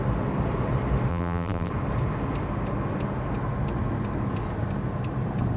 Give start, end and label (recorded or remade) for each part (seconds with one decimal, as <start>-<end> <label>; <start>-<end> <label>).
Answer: 0.0-1.1 recorded; 1.1-1.7 remade; 1.7-5.6 recorded